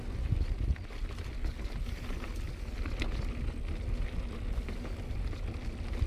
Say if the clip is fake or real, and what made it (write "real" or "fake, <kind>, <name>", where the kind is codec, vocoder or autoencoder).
real